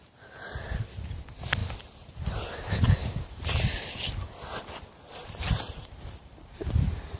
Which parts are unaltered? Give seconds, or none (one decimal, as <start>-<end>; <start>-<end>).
0.0-1.6; 3.6-5.2